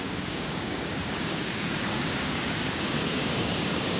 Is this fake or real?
fake